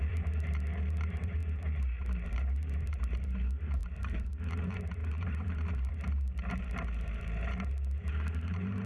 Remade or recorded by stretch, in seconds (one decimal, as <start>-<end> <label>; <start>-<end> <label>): 0.0-8.9 remade